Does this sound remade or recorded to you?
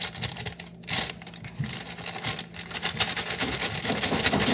recorded